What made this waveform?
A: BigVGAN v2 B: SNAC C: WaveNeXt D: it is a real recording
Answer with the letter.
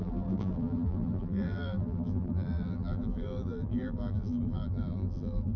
A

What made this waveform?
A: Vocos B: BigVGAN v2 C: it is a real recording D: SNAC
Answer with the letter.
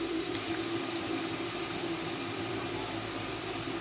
B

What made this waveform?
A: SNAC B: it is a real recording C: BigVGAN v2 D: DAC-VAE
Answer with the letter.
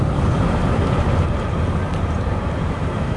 C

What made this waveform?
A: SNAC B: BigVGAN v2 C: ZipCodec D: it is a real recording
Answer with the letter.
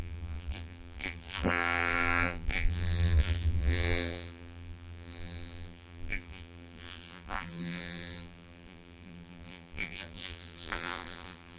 B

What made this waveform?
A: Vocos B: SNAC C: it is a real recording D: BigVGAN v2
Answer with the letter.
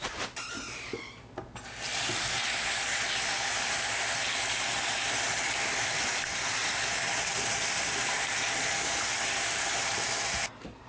C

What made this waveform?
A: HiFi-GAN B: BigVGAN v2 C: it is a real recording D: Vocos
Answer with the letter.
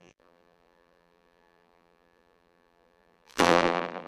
B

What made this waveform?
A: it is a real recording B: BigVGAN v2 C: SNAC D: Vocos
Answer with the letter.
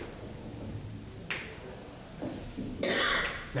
A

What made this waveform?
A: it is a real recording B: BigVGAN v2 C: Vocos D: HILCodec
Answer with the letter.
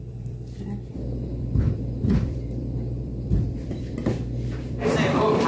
B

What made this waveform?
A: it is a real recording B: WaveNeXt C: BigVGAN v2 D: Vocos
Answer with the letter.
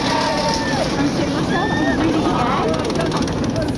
A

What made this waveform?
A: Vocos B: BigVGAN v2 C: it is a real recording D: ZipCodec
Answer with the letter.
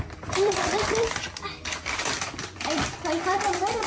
B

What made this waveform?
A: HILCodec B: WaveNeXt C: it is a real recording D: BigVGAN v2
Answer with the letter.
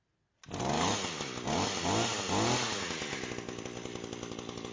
C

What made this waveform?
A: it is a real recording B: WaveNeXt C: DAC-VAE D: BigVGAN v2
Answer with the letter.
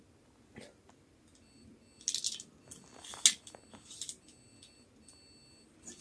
A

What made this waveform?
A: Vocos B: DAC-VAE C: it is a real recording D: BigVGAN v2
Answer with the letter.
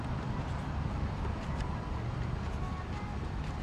C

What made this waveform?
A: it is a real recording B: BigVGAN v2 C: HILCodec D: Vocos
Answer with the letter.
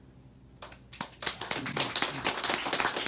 A